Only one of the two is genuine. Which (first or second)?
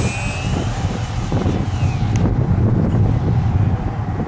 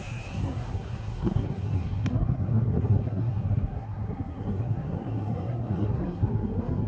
first